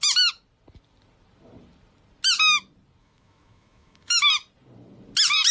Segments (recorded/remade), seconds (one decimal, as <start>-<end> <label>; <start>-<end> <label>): 0.0-3.0 recorded; 3.0-4.2 remade; 4.2-5.5 recorded